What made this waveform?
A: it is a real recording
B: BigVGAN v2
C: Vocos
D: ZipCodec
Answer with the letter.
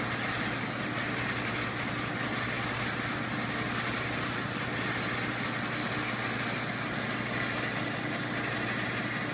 A